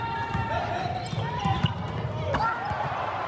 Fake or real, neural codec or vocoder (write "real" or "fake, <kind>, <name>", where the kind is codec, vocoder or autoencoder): real